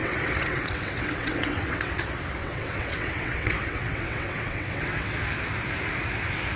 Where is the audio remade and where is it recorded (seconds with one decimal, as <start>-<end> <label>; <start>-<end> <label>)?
0.0-2.0 remade; 2.0-2.4 recorded; 2.4-5.2 remade; 5.2-6.6 recorded